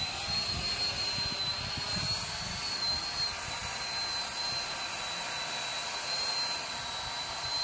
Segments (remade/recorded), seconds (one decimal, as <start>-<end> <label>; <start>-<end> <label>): 0.0-7.6 recorded